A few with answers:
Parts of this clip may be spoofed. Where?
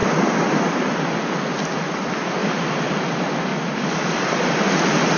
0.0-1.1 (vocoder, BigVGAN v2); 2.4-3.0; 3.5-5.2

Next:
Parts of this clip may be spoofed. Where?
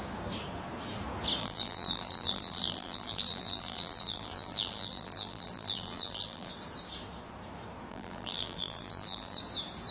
1.4-6.5 (vocoder, BigVGAN v2); 7.9-9.4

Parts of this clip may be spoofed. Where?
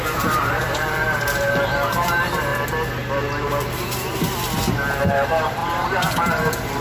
0.0-2.5 (vocoder, BigVGAN v2); 5.1-6.8